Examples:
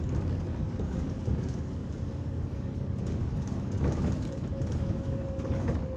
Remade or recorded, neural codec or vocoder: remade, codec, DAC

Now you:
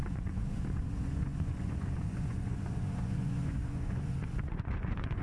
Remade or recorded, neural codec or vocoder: remade, vocoder, Vocos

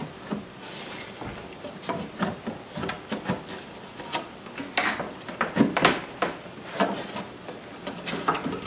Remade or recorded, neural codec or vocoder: recorded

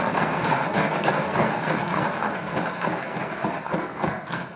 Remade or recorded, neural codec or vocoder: remade, codec, SNAC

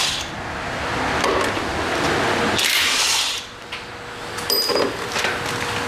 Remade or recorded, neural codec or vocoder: recorded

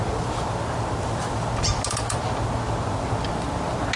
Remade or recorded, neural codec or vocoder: recorded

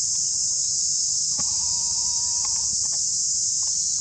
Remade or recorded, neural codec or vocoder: recorded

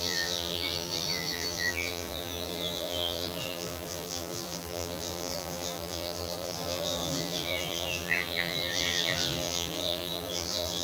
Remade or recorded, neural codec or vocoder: remade, vocoder, BigVGAN v2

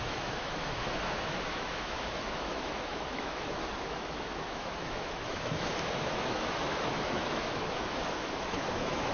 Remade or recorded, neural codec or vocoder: remade, autoencoder, DAC-VAE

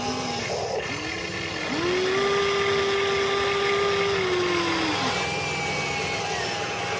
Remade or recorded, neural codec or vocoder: recorded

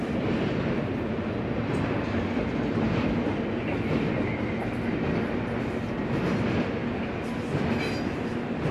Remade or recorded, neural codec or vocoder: recorded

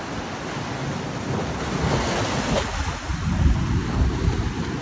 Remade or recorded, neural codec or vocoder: recorded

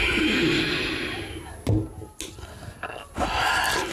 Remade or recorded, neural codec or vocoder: recorded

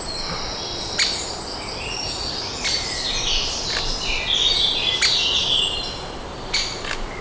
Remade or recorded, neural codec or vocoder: recorded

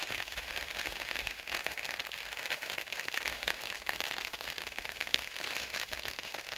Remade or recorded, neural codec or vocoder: remade, autoencoder, DAC-VAE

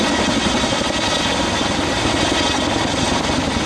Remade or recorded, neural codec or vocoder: recorded